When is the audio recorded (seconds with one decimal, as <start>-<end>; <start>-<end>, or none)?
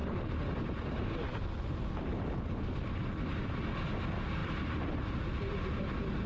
0.0-6.3